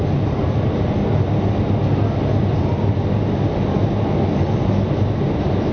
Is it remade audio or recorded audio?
recorded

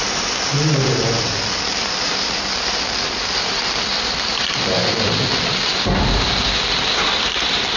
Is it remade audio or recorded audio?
remade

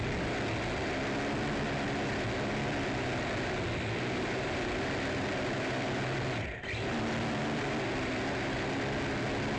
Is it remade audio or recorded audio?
recorded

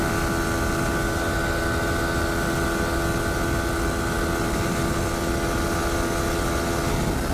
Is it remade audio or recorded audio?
recorded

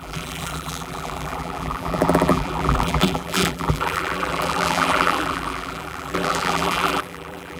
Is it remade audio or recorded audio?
remade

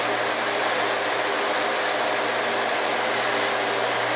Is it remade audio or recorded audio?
recorded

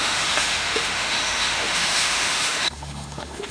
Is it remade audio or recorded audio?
remade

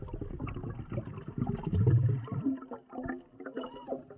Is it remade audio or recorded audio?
recorded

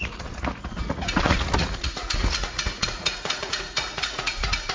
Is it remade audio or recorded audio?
remade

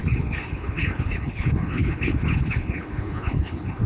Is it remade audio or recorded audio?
remade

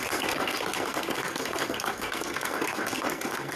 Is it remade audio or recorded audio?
remade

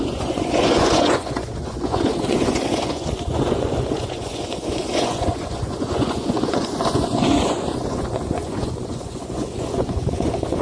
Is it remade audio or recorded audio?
remade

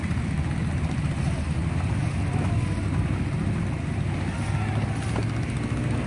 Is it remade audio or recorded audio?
recorded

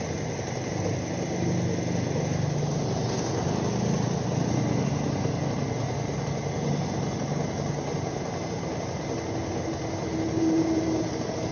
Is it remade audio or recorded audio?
recorded